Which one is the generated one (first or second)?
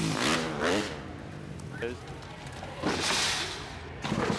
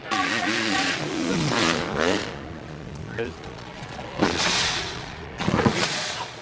second